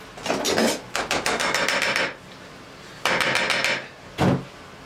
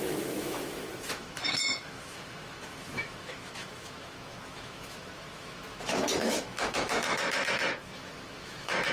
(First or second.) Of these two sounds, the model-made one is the second